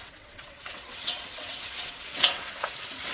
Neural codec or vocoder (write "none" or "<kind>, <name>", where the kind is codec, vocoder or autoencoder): vocoder, WaveNeXt